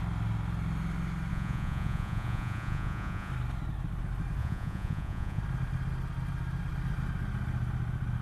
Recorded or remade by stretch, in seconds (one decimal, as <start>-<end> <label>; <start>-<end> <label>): 0.0-1.3 recorded; 1.3-3.3 remade; 3.3-4.4 recorded; 4.4-5.4 remade; 5.4-8.2 recorded